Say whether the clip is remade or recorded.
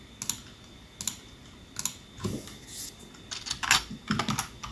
recorded